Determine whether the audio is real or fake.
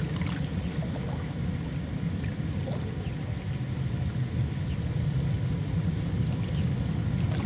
real